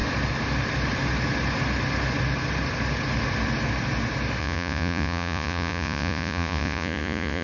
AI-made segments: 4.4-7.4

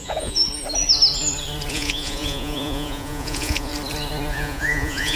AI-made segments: 0.0-0.4; 1.7-3.7; 4.3-5.2